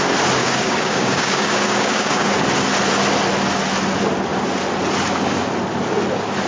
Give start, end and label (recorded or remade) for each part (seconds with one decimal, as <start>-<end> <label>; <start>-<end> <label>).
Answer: 0.0-0.4 recorded; 0.4-2.3 remade; 2.3-6.5 recorded